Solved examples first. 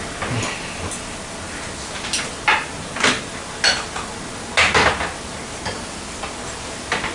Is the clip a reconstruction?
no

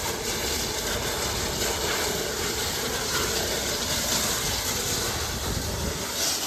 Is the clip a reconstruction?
no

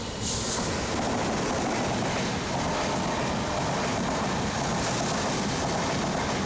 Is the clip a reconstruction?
no